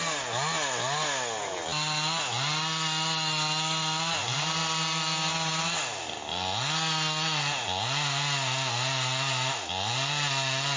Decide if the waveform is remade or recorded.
recorded